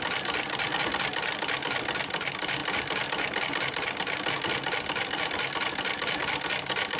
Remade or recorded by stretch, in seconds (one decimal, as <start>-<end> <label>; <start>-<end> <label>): 0.0-7.0 recorded